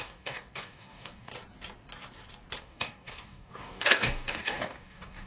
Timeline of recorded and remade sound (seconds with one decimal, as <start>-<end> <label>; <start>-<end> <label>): 0.0-1.3 remade; 1.3-2.6 recorded; 2.6-5.3 remade